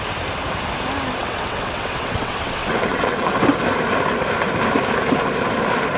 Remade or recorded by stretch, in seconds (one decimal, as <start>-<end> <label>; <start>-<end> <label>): 0.0-1.2 recorded; 1.2-3.4 remade; 3.4-6.0 recorded